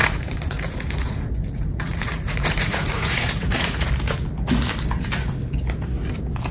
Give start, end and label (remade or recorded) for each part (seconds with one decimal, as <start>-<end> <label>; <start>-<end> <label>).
0.0-3.9 remade; 3.9-6.5 recorded